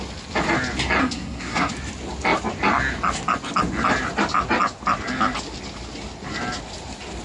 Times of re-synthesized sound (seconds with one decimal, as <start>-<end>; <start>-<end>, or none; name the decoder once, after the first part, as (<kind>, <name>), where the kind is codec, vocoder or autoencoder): 1.0-1.7 (codec, SNAC)